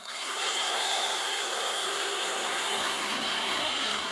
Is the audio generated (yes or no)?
yes